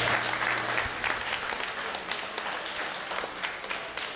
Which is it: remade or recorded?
recorded